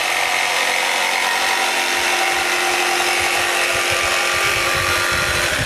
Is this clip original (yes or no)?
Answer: yes